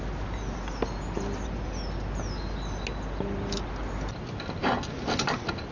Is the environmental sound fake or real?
real